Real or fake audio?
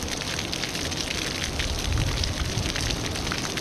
real